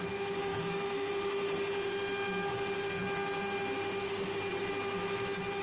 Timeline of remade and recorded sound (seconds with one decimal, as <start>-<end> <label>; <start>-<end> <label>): 0.0-0.5 recorded; 0.5-1.1 remade; 1.1-5.6 recorded